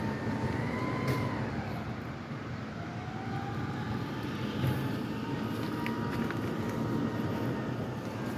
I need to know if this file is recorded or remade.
recorded